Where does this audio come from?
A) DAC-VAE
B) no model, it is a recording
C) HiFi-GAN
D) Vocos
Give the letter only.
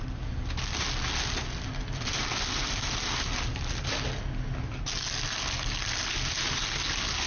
B